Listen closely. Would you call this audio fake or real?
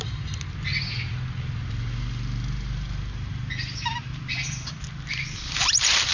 real